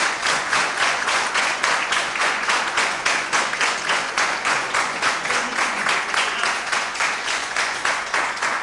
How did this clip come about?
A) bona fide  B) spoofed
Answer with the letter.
B